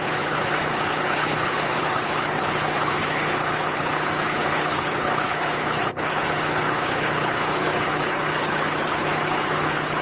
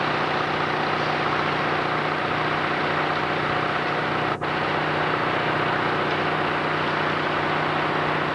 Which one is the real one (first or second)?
second